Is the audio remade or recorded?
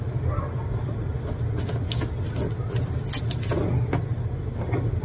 recorded